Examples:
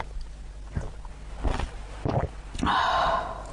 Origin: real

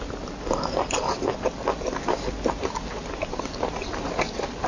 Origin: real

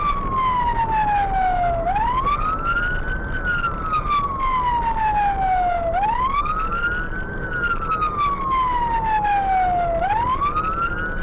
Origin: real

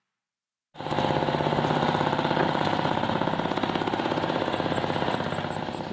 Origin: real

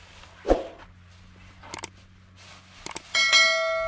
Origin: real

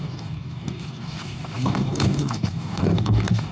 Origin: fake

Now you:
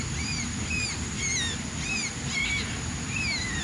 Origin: real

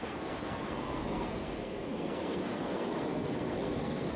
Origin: fake